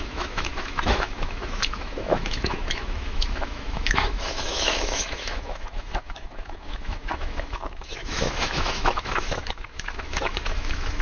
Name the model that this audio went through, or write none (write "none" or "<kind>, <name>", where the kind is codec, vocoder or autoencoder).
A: autoencoder, DAC-VAE